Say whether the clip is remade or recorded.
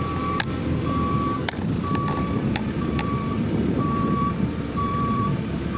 remade